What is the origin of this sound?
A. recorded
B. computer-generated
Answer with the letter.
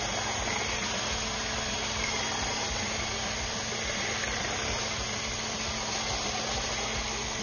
A